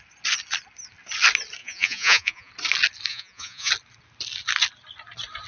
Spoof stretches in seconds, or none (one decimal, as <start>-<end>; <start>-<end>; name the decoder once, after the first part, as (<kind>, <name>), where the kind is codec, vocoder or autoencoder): 1.6-2.5 (vocoder, Vocos); 3.1-3.7